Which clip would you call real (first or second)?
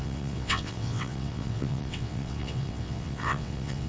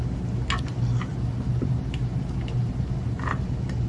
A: second